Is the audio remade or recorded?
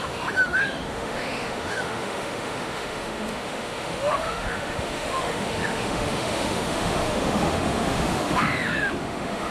remade